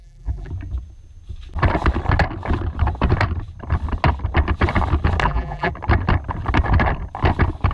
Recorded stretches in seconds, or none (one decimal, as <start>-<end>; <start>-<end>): 0.5-5.2; 5.7-7.7

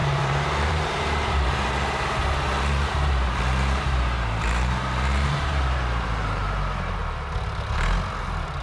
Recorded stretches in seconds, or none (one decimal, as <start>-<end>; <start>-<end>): 7.0-8.2

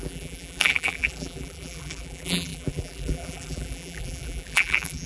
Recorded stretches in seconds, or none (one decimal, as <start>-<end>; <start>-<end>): none

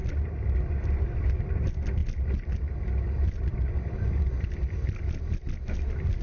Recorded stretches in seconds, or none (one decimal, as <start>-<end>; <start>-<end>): 0.0-6.2

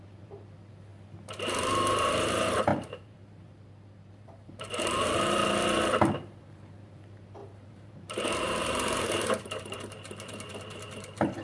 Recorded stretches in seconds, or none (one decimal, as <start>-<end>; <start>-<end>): 0.9-1.5; 5.4-6.4